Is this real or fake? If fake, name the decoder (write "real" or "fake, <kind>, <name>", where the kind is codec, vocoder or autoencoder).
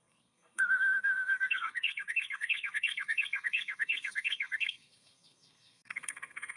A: fake, codec, SNAC